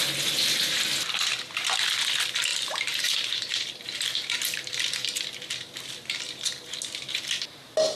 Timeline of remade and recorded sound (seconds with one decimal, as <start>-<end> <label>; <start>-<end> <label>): 0.0-2.5 recorded; 2.5-3.7 remade; 3.7-8.0 recorded